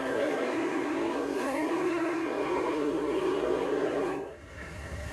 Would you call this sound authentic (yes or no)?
no